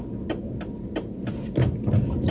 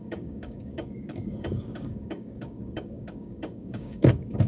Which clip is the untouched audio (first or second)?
first